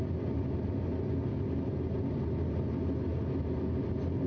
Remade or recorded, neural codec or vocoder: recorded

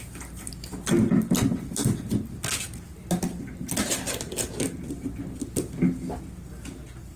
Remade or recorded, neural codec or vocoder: recorded